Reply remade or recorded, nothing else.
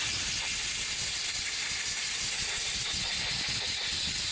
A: recorded